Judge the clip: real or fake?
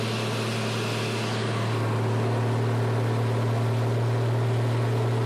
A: real